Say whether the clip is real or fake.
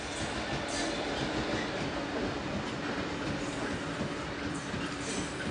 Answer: real